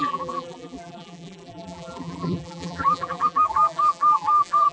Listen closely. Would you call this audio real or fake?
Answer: fake